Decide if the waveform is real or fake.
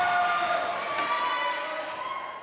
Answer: real